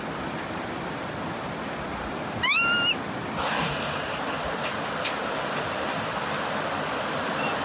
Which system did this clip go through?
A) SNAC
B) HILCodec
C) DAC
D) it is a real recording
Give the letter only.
D